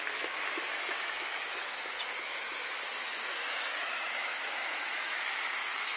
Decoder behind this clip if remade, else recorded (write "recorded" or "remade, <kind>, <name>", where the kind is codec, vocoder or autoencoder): remade, autoencoder, DAC-VAE